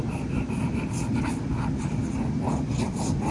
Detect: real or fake real